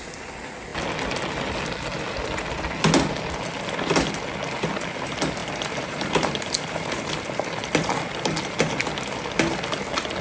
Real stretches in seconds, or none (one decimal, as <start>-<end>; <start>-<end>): 0.0-5.4; 7.0-10.2